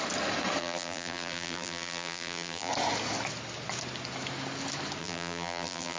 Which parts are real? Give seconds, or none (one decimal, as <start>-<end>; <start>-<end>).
0.0-0.6; 2.7-5.0